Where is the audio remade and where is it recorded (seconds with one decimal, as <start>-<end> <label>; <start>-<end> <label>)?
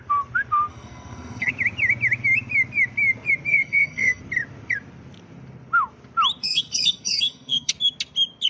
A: 0.0-0.7 recorded; 0.7-1.5 remade; 1.5-3.5 recorded; 3.5-4.2 remade; 4.2-6.4 recorded; 6.4-7.7 remade; 7.7-8.5 recorded